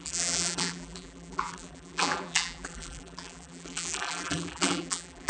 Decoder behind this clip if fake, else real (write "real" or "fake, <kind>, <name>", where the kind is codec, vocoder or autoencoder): fake, vocoder, BigVGAN v2